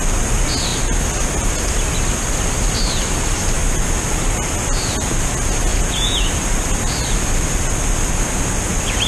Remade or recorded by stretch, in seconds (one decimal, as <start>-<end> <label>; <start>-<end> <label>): 0.0-5.7 recorded; 5.7-6.3 remade; 6.3-9.1 recorded